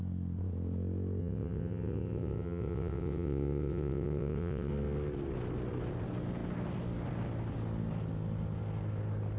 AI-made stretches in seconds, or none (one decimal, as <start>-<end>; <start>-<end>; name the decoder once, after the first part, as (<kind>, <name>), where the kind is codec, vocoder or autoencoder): 1.2-4.7 (vocoder, WaveNeXt)